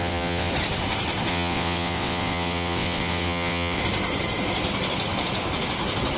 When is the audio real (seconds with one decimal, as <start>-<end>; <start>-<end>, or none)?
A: 0.5-1.3; 3.8-6.2